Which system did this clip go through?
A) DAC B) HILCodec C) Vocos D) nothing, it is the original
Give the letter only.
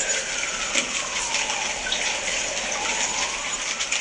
D